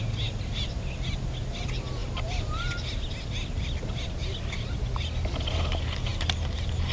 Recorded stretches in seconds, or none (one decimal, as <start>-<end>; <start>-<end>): 0.0-6.9

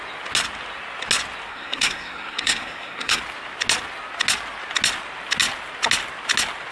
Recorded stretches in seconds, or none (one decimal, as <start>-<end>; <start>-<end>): 0.0-1.5; 3.2-6.7